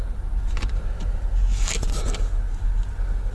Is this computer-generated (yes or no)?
no